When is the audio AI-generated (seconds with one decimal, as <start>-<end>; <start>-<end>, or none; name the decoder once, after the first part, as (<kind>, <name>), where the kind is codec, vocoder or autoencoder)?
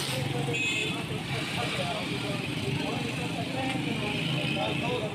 0.8-2.6 (vocoder, BigVGAN v2)